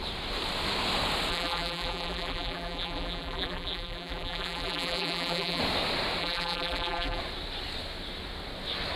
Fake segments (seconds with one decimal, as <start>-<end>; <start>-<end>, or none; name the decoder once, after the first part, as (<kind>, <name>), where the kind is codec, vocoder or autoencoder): 1.3-5.6 (vocoder, BigVGAN v2); 6.2-7.2